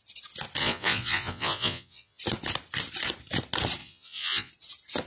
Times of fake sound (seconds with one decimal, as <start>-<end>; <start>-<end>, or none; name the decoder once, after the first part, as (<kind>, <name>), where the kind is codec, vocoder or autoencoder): 0.6-2.2 (vocoder, Vocos); 3.8-4.5